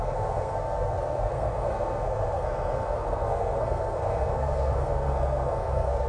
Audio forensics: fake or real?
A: fake